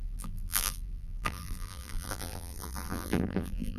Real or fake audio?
fake